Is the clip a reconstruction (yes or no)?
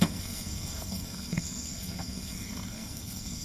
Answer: yes